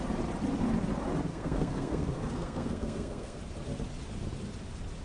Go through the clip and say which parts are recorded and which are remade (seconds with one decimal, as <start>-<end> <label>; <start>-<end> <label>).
0.0-1.3 recorded; 1.3-3.4 remade; 3.4-5.0 recorded